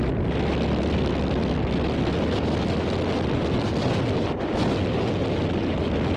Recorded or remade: recorded